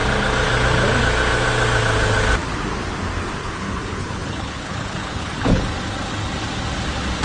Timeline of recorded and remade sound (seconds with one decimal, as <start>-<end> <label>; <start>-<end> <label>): 0.0-3.4 recorded; 3.4-5.6 remade; 5.6-7.2 recorded

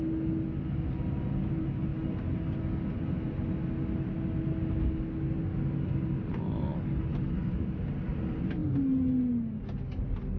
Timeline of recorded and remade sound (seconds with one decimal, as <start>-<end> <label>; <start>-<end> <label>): 0.0-10.4 recorded

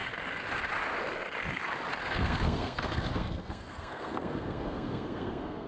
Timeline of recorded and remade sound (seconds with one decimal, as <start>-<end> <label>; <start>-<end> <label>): 0.0-2.0 recorded; 2.0-5.7 remade